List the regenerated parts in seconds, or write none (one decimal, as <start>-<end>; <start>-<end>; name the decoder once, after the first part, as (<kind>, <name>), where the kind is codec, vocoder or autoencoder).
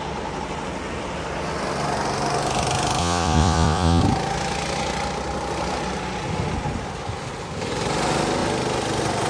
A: 3.0-4.0 (vocoder, Vocos)